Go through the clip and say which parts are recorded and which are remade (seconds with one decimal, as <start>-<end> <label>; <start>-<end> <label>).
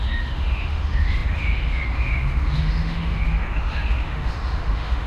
0.0-5.1 remade